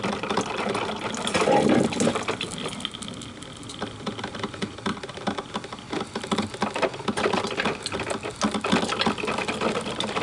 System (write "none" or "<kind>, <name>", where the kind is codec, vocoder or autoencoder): none